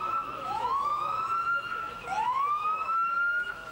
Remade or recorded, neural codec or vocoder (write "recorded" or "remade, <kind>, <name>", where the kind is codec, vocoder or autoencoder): remade, autoencoder, DAC-VAE